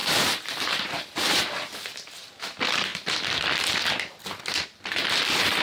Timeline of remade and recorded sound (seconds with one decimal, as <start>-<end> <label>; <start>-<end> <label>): 0.0-1.4 remade; 1.4-5.6 recorded